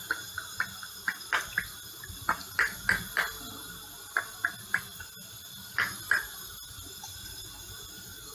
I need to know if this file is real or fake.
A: real